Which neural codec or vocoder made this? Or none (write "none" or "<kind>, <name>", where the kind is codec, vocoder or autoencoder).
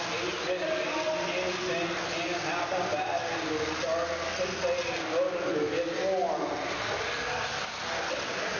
none